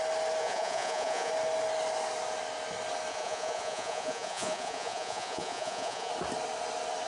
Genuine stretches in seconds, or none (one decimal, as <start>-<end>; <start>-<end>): 0.0-0.4; 1.3-3.1; 6.1-7.1